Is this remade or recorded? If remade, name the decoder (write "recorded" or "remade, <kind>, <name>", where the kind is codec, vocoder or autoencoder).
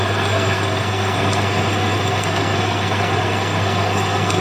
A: remade, codec, SNAC